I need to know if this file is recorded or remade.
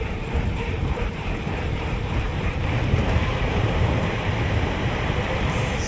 remade